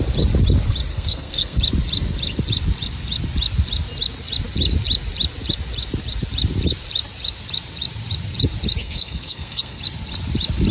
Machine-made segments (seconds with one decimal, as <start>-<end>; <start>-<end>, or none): 0.9-1.6; 8.8-9.8